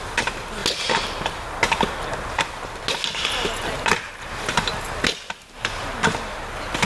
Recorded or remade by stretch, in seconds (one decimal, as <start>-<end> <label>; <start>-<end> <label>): 0.0-6.9 recorded